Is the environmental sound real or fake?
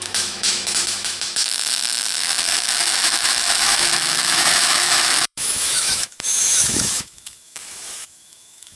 fake